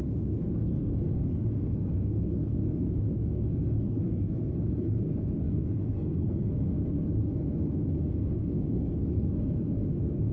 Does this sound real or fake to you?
fake